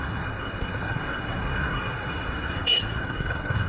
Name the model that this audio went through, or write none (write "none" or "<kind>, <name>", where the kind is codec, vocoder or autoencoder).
codec, SNAC